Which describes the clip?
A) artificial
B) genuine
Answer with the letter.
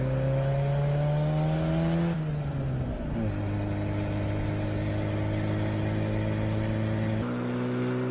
B